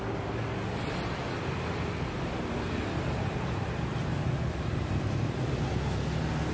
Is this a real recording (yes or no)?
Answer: yes